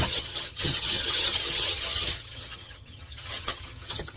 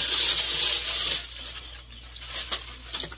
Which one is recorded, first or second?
second